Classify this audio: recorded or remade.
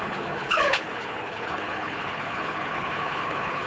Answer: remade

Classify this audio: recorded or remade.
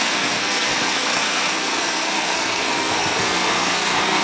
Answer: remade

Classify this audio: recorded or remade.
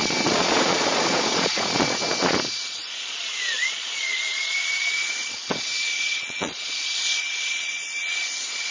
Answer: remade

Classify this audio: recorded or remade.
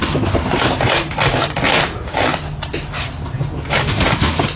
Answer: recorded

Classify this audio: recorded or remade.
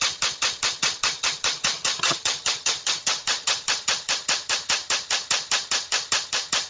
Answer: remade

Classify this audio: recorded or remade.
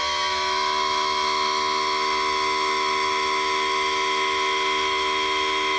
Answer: remade